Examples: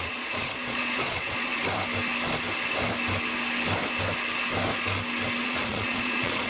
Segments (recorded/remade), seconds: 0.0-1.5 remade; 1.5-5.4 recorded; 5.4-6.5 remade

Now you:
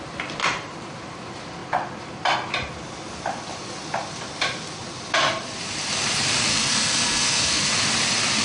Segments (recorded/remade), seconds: 0.0-6.5 recorded; 6.5-7.7 remade; 7.7-8.4 recorded

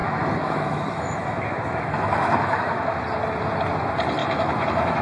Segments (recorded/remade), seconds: 0.0-3.0 remade; 3.0-4.2 recorded; 4.2-5.0 remade

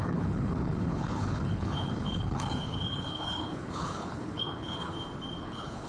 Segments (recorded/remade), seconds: 0.0-4.9 remade; 4.9-5.4 recorded; 5.4-5.9 remade